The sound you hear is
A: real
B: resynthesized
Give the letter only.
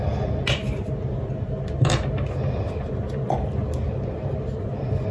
A